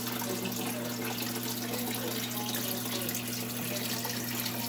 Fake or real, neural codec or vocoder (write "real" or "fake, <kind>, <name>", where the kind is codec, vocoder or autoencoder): real